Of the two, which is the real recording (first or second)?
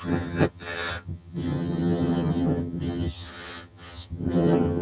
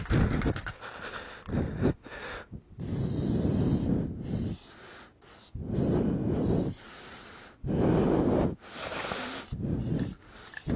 second